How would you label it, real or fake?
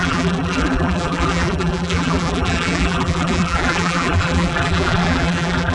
fake